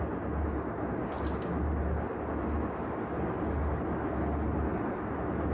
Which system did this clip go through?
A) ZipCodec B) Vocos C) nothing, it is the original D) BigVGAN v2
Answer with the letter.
C